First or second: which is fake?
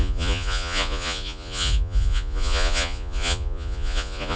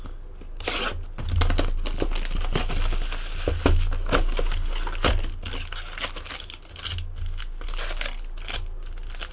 first